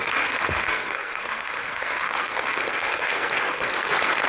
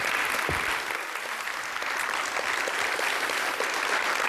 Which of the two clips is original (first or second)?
second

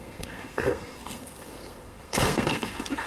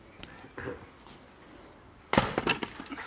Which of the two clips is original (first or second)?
second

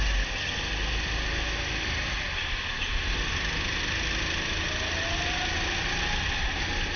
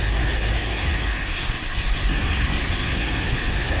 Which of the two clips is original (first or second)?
first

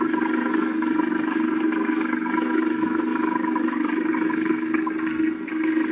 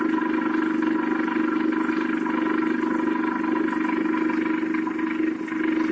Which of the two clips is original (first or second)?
second